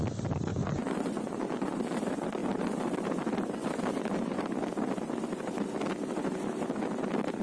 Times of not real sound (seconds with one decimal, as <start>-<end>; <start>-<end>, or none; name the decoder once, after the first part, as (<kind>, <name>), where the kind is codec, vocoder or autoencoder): 0.5-1.8 (vocoder, Vocos)